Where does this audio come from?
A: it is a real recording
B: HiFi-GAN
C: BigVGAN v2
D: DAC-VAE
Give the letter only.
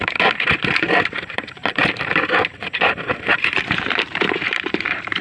C